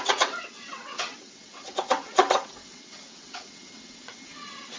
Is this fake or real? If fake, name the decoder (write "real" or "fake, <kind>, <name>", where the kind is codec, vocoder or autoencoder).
fake, vocoder, WaveNeXt